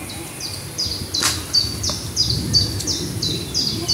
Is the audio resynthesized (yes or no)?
no